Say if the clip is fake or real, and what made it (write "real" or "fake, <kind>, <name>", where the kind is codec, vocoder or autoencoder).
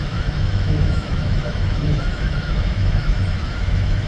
fake, autoencoder, DAC-VAE